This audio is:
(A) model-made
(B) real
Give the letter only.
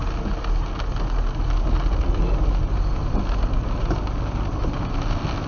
B